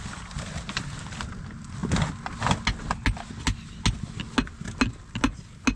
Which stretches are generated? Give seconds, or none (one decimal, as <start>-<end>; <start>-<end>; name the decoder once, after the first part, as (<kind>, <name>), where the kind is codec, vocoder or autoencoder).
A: none